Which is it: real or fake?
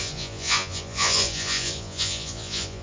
fake